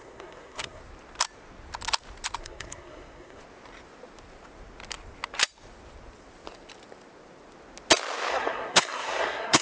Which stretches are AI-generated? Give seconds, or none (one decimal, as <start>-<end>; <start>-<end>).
0.0-0.8; 2.4-3.4; 8.3-9.6